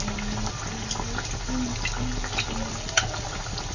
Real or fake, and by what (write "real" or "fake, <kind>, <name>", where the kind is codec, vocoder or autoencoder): real